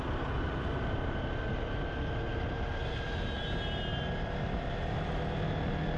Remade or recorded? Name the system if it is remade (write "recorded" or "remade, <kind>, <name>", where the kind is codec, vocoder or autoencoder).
recorded